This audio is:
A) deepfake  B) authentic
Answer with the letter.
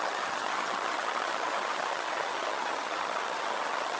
A